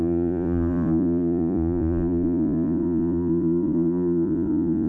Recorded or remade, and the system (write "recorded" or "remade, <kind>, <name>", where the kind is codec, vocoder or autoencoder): remade, vocoder, Vocos